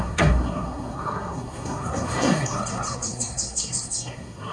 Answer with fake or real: fake